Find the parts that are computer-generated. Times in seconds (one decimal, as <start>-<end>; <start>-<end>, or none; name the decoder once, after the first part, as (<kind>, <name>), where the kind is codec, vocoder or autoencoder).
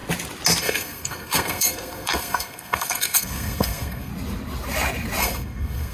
0.6-4.1 (codec, SNAC); 5.2-5.9